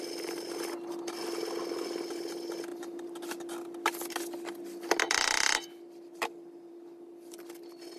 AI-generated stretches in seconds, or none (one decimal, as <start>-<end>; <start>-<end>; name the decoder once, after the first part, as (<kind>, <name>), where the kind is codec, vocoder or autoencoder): none